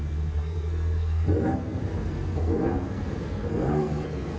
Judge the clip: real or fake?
fake